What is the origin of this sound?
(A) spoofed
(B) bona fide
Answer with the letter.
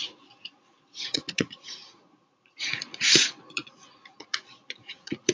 A